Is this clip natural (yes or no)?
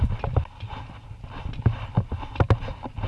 yes